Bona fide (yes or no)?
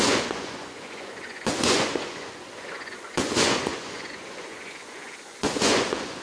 no